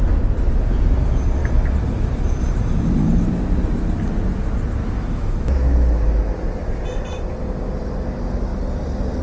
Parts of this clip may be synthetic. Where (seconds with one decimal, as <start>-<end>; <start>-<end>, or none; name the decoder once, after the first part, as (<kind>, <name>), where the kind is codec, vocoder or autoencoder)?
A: 4.8-6.2 (autoencoder, DAC-VAE)